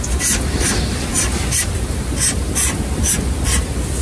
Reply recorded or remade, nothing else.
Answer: recorded